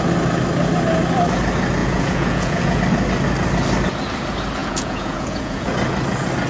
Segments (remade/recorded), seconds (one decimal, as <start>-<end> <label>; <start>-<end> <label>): 0.0-1.8 recorded; 1.8-2.8 remade; 2.8-4.6 recorded; 4.6-5.7 remade; 5.7-6.5 recorded